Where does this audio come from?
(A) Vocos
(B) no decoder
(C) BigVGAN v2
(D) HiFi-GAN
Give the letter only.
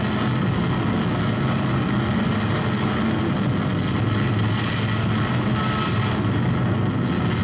B